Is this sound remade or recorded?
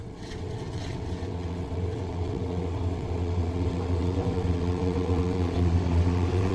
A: remade